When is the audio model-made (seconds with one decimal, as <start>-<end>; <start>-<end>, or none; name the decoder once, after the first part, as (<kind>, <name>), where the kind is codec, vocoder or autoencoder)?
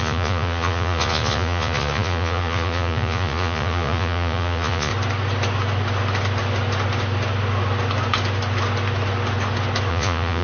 0.0-4.9 (vocoder, Vocos); 9.9-10.4